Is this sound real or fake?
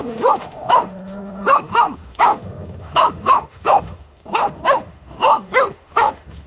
fake